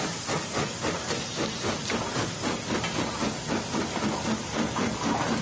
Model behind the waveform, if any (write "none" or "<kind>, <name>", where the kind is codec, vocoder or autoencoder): none